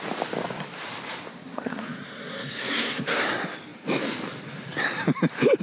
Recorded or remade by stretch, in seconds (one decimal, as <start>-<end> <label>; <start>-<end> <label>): 0.0-1.3 recorded; 1.3-3.2 remade; 3.2-5.6 recorded